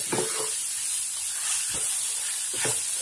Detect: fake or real real